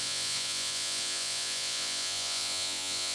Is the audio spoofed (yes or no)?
yes